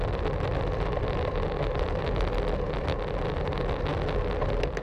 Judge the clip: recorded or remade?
recorded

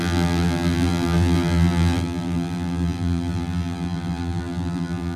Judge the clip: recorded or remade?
remade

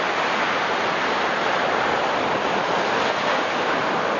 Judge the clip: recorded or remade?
recorded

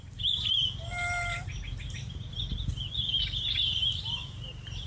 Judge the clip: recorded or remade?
recorded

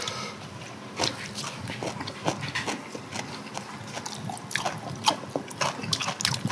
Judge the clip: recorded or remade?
recorded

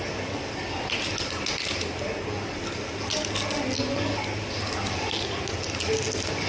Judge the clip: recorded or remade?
recorded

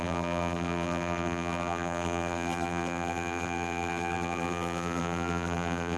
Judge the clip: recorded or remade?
remade